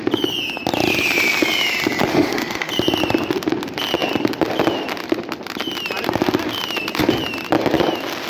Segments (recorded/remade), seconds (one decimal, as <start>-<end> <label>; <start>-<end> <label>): 0.0-2.1 recorded; 2.1-2.7 remade; 2.7-8.3 recorded